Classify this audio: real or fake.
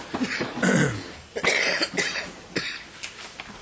real